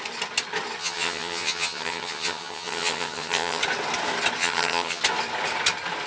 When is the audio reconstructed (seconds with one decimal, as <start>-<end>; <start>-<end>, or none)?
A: 0.8-3.6; 4.4-5.0